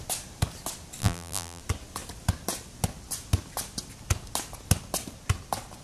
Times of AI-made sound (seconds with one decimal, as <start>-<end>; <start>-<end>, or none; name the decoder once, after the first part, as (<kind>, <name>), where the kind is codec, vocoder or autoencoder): 1.0-1.6 (vocoder, BigVGAN v2)